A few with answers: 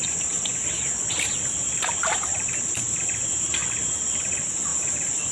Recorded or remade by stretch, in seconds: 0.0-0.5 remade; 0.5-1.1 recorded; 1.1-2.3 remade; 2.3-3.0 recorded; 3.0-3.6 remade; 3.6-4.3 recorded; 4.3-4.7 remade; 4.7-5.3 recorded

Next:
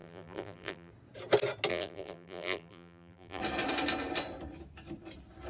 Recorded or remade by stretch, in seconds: 0.0-0.9 remade; 0.9-1.7 recorded; 1.7-3.4 remade; 3.4-5.5 recorded

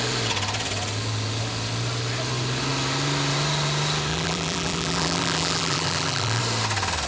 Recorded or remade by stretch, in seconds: 0.0-4.1 recorded; 4.1-6.4 remade; 6.4-7.1 recorded

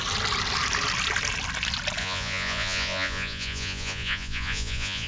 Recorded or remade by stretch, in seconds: 0.0-2.0 recorded; 2.0-5.1 remade

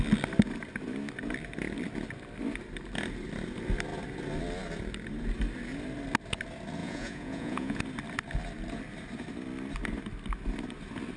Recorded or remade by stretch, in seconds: 0.0-6.8 recorded; 6.8-7.8 remade; 7.8-11.2 recorded

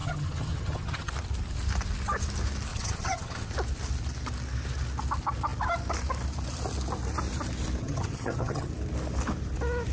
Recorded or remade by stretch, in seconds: 0.0-1.1 remade; 1.1-2.7 recorded; 2.7-3.5 remade; 3.5-7.8 recorded; 7.8-8.7 remade; 8.7-9.9 recorded

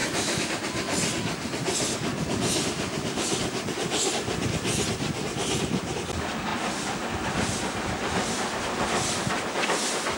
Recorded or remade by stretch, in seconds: 0.0-0.5 remade; 0.5-10.2 recorded